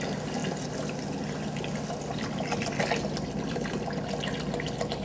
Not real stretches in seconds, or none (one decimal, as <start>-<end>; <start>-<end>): none